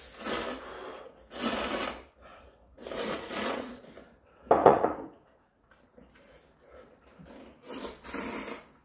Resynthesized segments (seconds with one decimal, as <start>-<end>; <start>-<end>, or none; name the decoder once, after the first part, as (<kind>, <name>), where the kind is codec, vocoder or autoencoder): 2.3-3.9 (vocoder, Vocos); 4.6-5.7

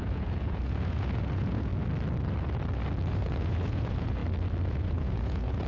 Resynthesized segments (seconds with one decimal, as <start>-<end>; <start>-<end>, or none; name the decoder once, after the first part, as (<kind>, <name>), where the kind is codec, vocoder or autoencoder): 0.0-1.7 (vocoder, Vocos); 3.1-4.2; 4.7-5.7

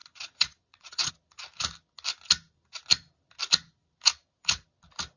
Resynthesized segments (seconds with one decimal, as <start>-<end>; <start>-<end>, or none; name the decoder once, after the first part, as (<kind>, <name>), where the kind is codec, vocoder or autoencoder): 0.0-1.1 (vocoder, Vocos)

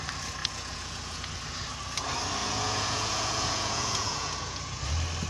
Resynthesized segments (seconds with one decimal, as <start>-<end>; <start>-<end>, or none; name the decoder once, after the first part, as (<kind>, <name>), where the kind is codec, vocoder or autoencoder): 0.4-1.3 (vocoder, Vocos); 2.4-4.8